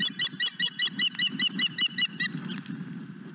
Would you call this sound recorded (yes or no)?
yes